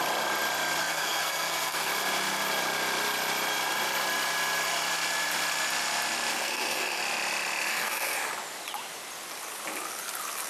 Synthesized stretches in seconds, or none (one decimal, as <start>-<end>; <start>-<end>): 0.8-1.9; 6.3-7.0; 7.7-8.3